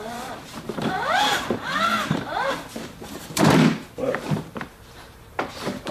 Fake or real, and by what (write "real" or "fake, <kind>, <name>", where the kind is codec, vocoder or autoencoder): fake, vocoder, BigVGAN v2